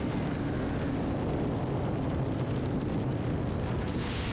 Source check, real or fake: real